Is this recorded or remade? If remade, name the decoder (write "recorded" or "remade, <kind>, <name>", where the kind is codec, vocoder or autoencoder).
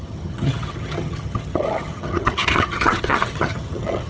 remade, vocoder, HiFi-GAN